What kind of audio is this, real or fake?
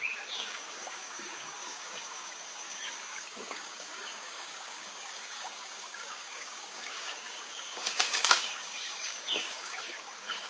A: fake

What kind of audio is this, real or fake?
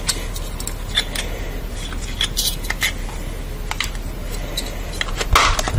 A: real